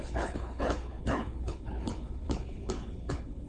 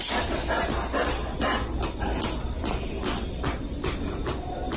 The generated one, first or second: first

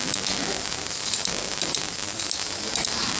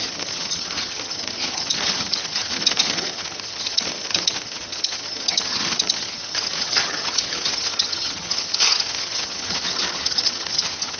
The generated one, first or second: second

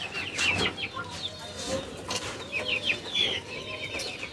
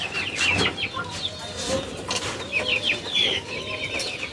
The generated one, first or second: second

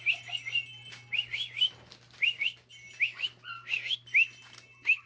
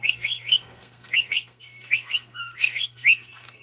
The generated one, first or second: second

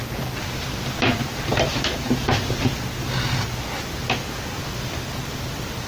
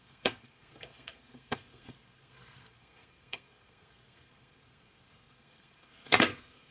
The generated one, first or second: second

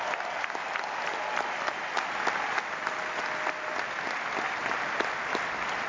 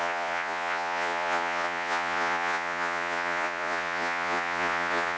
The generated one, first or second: second